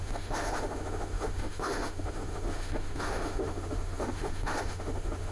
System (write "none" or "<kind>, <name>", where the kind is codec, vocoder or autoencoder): autoencoder, DAC-VAE